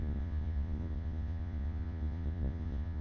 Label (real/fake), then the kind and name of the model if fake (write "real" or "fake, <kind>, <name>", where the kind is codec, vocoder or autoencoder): fake, vocoder, Vocos